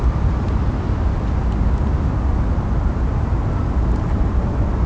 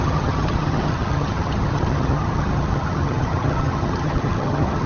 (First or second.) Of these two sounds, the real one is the first